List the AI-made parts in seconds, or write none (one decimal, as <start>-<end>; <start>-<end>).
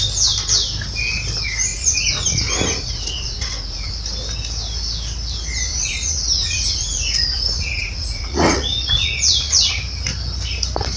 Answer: 1.7-3.9; 5.7-9.7